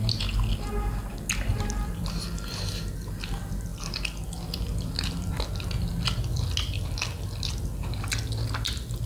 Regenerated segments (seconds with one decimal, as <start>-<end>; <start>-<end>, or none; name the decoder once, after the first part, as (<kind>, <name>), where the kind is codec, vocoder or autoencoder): 1.5-2.0 (vocoder, BigVGAN v2); 3.7-6.8